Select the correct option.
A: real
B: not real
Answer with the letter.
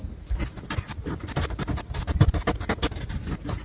A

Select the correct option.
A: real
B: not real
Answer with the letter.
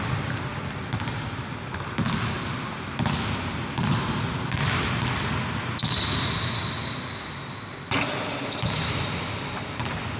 A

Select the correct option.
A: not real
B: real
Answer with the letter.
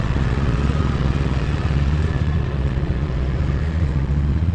A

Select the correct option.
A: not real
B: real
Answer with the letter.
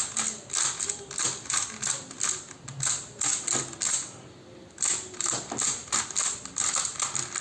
B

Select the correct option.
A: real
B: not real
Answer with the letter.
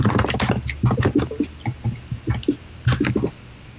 A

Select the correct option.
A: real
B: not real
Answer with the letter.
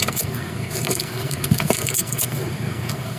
B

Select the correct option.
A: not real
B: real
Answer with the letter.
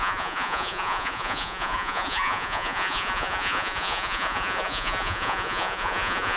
A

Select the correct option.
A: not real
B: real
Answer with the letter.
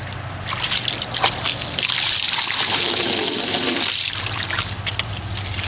B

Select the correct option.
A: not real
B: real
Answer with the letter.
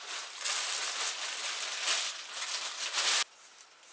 B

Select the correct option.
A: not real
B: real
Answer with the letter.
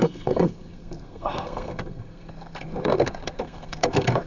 A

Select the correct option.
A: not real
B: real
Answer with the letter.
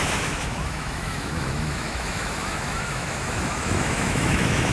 A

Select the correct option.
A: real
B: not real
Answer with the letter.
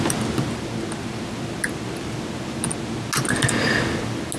A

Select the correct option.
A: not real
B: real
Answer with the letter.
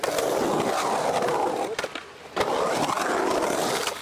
B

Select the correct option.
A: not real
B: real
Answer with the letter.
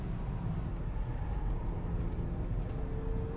B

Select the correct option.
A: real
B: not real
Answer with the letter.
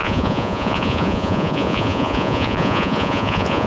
B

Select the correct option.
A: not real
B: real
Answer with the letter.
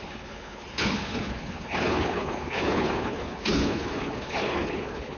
A